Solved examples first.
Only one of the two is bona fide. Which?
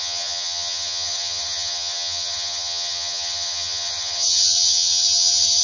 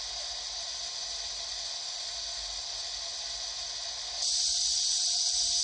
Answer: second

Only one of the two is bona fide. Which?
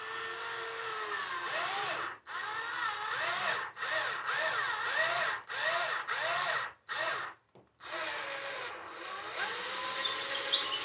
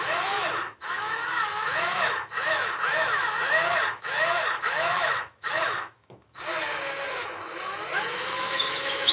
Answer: first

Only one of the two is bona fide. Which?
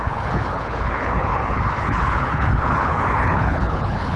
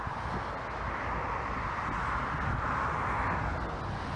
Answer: second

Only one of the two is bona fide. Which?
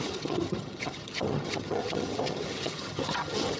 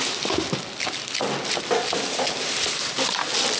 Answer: second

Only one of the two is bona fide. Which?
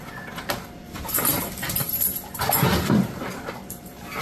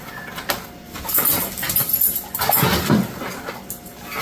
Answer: second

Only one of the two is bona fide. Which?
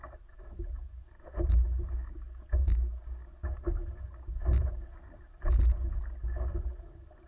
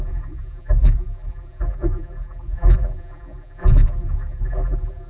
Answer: first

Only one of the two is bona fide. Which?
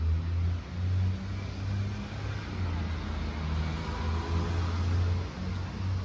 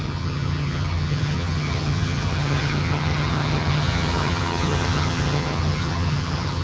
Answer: first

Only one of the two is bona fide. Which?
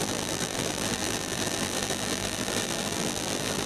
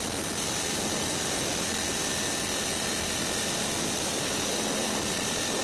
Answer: second